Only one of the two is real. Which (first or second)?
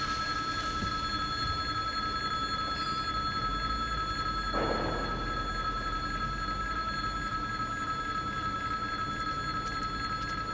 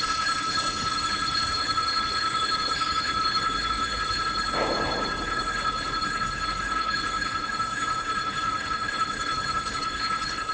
first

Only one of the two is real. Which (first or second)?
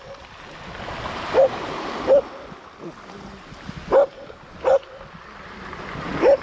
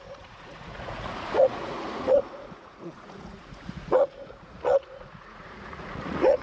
first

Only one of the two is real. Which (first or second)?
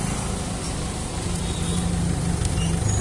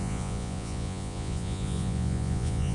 first